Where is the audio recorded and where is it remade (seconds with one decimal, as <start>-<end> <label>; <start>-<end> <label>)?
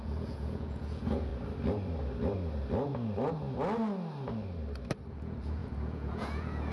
0.0-1.3 remade; 1.3-5.1 recorded; 5.1-6.7 remade